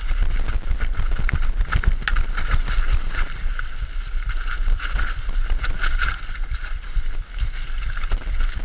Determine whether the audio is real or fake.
real